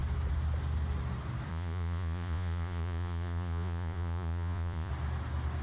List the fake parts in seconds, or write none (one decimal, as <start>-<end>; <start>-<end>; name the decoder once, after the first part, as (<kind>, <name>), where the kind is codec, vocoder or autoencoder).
1.5-4.9 (vocoder, Vocos)